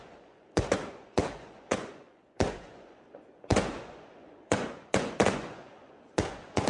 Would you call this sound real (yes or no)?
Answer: no